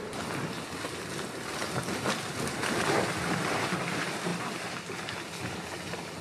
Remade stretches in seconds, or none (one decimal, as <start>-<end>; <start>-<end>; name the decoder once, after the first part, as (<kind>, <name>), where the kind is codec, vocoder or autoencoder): 1.6-2.4 (vocoder, BigVGAN v2)